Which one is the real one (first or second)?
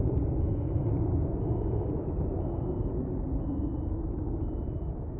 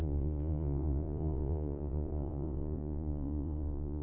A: first